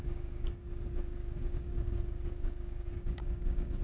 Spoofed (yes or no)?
yes